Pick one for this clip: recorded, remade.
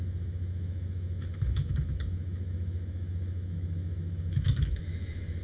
remade